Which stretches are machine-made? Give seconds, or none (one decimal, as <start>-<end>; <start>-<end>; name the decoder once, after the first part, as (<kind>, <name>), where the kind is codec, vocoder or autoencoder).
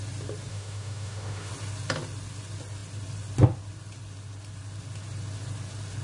0.5-1.5 (autoencoder, DAC-VAE)